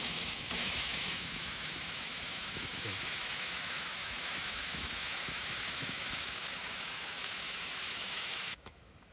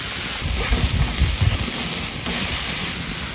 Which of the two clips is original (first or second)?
second